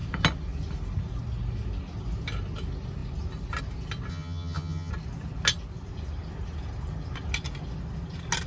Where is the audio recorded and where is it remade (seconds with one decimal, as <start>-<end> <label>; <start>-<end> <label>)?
0.0-4.1 recorded; 4.1-4.9 remade; 4.9-8.5 recorded